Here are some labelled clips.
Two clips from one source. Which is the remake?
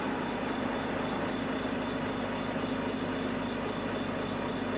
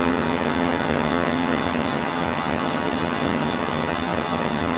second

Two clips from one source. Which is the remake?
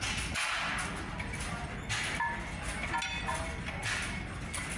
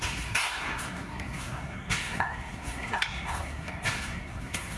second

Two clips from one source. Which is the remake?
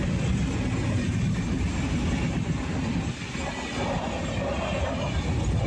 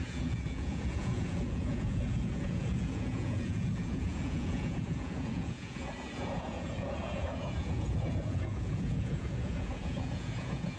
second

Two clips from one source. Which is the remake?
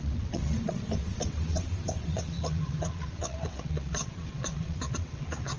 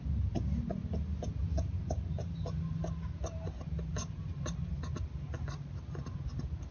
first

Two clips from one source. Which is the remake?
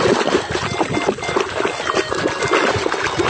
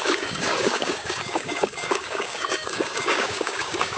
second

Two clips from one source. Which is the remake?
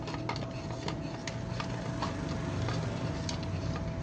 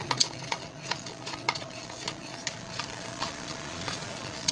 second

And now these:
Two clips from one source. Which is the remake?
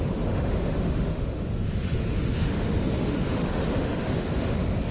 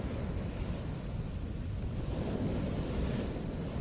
first